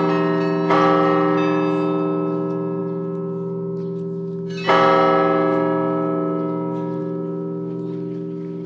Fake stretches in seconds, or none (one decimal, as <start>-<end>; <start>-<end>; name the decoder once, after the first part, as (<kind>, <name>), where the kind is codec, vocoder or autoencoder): none